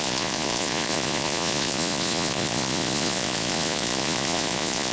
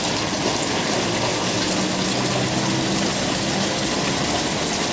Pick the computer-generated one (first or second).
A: first